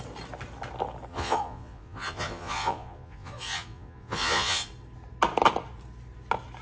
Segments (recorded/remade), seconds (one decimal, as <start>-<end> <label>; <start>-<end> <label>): 0.0-1.1 recorded; 1.1-4.7 remade; 4.7-6.6 recorded